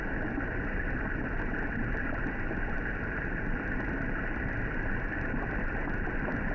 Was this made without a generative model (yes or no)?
yes